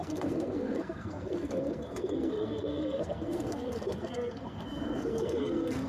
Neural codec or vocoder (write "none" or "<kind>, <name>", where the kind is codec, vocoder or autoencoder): codec, SNAC